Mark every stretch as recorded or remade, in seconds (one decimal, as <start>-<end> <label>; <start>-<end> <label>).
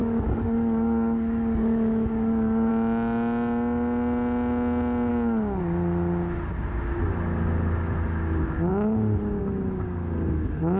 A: 0.0-2.7 remade; 2.7-5.1 recorded; 5.1-5.6 remade; 5.6-10.8 recorded